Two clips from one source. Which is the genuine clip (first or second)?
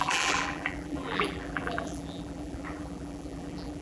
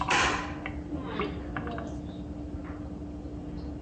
second